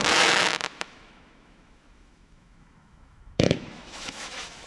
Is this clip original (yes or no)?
no